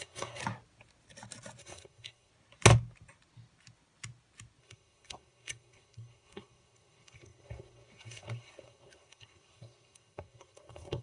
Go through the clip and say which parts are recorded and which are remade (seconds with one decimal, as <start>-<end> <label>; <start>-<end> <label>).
0.0-0.4 remade; 0.4-1.6 recorded; 1.6-2.3 remade; 2.3-4.6 recorded; 4.6-11.0 remade